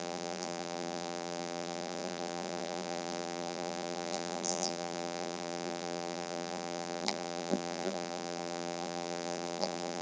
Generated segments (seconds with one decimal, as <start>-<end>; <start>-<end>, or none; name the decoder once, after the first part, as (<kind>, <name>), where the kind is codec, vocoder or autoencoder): 0.0-10.0 (vocoder, BigVGAN v2)